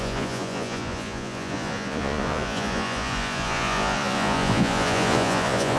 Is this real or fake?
fake